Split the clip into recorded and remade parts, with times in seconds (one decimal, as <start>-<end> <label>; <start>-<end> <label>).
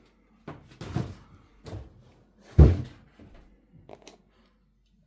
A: 0.0-5.1 recorded